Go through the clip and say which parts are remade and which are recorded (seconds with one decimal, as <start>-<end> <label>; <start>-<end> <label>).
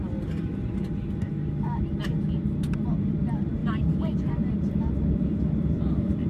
0.0-3.6 recorded; 3.6-4.8 remade; 4.8-6.3 recorded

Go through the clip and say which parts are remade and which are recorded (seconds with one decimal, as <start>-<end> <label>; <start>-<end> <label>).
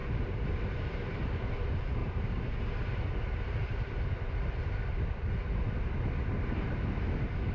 0.0-1.5 remade; 1.5-2.0 recorded; 2.0-2.5 remade; 2.5-7.5 recorded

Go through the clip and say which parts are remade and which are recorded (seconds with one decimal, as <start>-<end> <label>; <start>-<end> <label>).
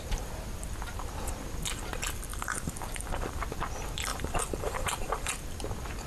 0.0-2.3 recorded; 2.3-3.4 remade; 3.4-4.1 recorded; 4.1-5.3 remade; 5.3-6.1 recorded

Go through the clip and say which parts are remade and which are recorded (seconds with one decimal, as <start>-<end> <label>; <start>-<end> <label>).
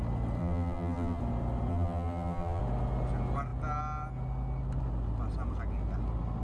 0.0-0.4 recorded; 0.4-1.2 remade; 1.2-1.7 recorded; 1.7-2.6 remade; 2.6-6.4 recorded